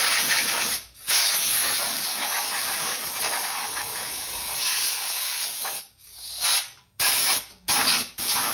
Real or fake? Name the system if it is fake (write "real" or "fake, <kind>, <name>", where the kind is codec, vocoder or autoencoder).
fake, codec, DAC